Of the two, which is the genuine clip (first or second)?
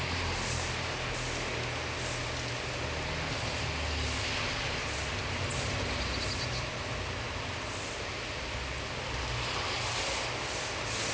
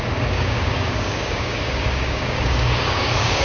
first